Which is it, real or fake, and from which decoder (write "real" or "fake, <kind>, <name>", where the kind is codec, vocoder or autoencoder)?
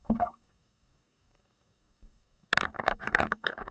fake, codec, DAC